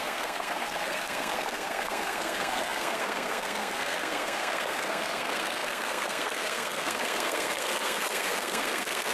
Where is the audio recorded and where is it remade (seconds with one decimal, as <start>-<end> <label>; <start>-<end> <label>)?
0.0-9.1 remade